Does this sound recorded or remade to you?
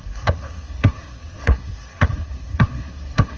remade